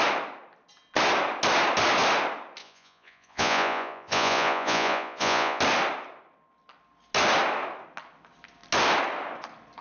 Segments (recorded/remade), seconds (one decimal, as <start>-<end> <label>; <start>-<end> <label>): 0.0-2.6 recorded; 2.6-5.6 remade; 5.6-9.8 recorded